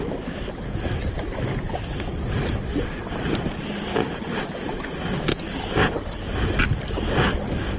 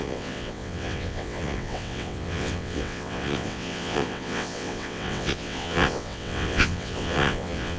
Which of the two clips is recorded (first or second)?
first